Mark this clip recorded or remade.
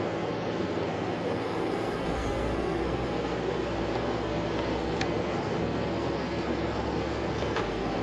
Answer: remade